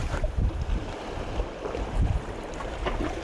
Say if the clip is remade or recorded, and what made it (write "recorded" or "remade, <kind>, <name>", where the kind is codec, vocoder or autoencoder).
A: recorded